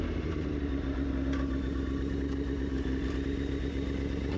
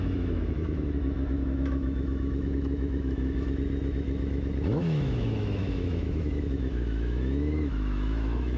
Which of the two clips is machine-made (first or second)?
second